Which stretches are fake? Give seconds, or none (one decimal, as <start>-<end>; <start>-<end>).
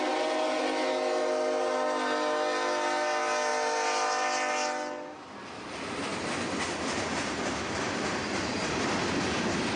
none